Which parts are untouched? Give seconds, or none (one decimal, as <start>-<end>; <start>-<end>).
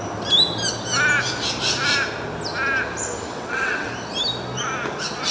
0.0-3.3; 3.9-5.3